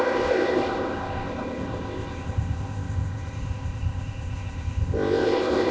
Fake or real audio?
fake